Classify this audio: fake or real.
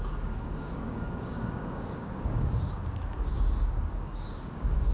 fake